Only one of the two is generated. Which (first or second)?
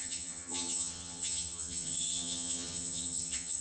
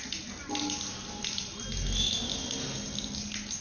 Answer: first